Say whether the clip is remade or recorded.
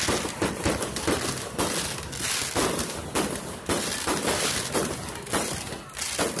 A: recorded